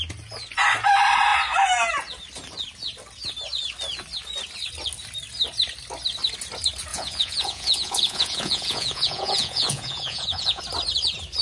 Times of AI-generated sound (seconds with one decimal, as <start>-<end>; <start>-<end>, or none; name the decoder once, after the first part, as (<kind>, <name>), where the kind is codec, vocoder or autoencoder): 6.9-10.6 (vocoder, Vocos)